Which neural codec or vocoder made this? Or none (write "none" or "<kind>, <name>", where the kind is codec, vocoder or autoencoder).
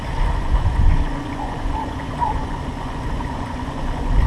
vocoder, Vocos